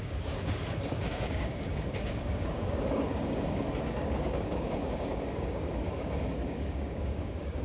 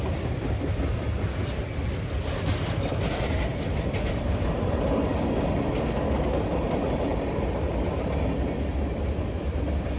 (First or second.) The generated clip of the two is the first